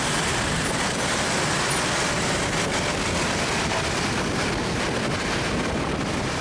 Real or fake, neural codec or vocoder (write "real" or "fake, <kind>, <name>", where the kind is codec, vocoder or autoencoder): real